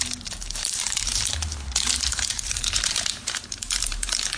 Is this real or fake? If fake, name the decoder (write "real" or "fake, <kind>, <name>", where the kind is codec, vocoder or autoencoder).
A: fake, vocoder, BigVGAN v2